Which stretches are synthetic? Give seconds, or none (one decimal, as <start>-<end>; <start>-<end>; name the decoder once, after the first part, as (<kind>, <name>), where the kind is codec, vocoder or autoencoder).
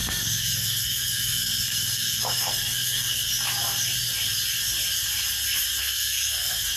0.0-3.3 (codec, SNAC); 5.8-6.8